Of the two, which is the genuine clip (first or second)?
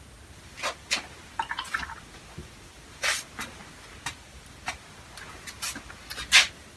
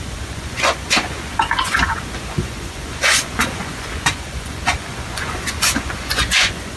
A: first